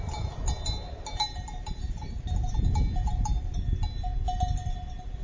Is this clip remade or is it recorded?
recorded